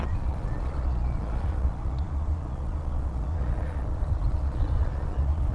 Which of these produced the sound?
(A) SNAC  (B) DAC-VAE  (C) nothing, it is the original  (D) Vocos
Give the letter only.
D